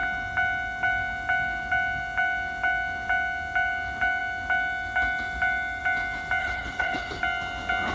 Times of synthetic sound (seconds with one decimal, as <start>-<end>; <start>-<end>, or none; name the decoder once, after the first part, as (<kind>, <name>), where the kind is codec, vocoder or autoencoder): 6.4-7.2 (codec, HILCodec)